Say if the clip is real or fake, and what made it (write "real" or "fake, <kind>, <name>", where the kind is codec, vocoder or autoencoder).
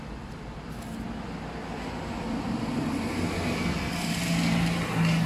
real